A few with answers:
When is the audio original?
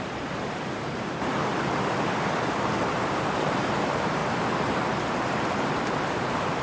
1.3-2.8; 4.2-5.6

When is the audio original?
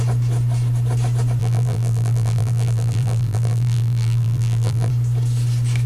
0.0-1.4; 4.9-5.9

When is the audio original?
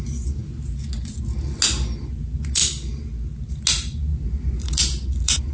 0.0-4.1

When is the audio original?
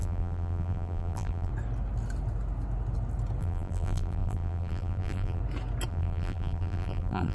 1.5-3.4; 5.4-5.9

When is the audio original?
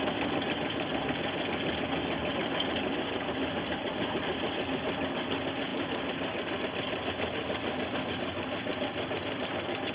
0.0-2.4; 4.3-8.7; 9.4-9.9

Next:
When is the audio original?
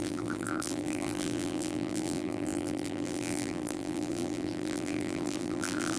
none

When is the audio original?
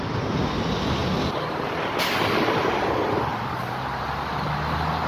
0.0-5.1